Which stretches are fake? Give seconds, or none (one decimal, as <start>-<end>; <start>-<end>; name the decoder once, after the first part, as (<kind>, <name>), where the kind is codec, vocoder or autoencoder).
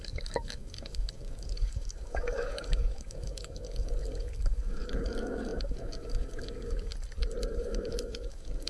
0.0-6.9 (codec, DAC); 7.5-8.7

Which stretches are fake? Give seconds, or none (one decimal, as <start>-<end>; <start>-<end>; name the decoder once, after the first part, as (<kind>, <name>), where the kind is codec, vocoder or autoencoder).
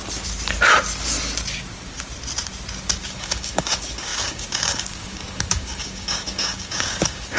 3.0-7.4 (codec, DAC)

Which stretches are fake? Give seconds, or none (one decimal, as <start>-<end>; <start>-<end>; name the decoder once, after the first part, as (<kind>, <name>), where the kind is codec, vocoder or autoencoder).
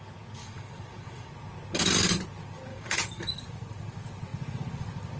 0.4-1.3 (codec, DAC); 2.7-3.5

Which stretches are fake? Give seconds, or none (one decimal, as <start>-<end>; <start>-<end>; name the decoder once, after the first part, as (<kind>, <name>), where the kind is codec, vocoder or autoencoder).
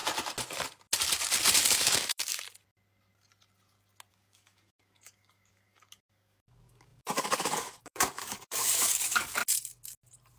1.7-2.3 (codec, DAC); 4.1-9.4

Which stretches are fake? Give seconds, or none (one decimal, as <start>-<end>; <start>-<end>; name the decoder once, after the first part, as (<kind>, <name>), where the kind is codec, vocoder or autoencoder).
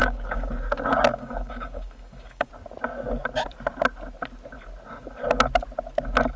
0.0-0.5 (codec, DAC); 1.1-2.5